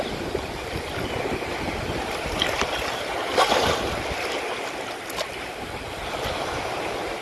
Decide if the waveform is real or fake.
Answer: real